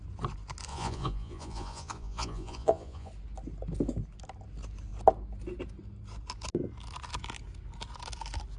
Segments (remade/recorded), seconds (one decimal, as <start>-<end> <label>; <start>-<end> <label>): 0.0-0.7 recorded; 0.7-3.1 remade; 3.1-8.6 recorded